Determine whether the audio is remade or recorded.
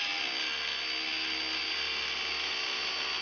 recorded